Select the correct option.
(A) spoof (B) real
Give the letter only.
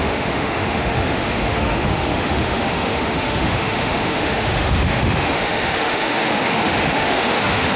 A